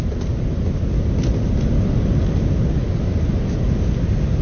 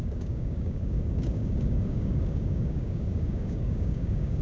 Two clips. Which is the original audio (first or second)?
first